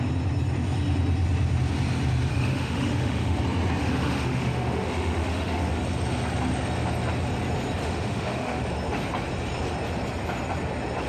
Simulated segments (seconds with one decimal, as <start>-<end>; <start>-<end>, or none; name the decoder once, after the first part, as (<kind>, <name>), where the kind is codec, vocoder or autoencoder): 2.3-3.4 (autoencoder, DAC-VAE); 3.8-5.7; 7.8-8.6